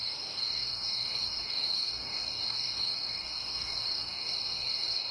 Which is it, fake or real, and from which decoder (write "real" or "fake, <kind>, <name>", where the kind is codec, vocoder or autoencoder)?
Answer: fake, codec, DAC